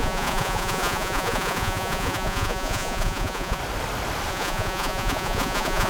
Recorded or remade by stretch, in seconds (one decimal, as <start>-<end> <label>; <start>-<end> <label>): 0.0-3.6 remade; 3.6-4.3 recorded; 4.3-5.9 remade